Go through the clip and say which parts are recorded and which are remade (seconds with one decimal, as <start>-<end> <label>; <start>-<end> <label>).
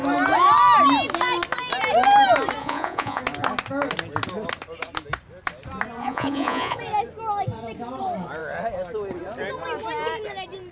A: 0.0-2.6 recorded; 2.6-3.2 remade; 3.2-6.0 recorded; 6.0-6.8 remade; 6.8-10.7 recorded